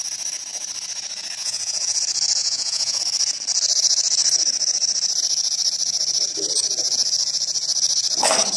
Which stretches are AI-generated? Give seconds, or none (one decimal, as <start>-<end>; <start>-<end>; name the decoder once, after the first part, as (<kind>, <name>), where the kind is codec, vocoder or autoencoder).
1.4-2.0 (vocoder, Vocos); 2.4-3.0